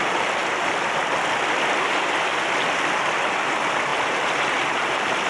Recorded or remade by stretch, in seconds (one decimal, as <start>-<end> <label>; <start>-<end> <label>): 0.0-5.3 recorded